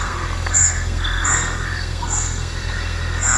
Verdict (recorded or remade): remade